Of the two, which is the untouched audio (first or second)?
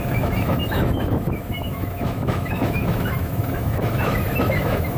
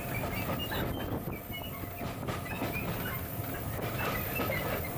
second